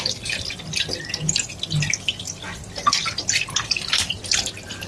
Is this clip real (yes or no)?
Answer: yes